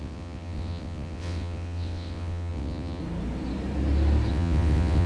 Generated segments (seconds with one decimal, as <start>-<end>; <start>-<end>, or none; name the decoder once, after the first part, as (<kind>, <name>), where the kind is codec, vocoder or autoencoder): 0.0-3.0 (vocoder, WaveNeXt); 4.3-5.1